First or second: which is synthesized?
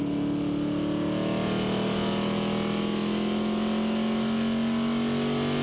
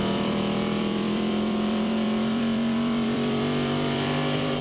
second